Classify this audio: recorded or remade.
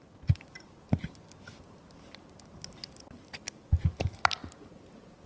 recorded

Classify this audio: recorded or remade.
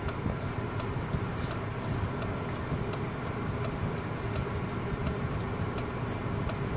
recorded